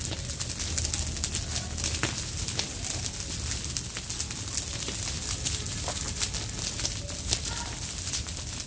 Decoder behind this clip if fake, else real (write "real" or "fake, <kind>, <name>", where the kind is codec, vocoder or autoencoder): real